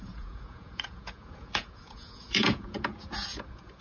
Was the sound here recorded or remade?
remade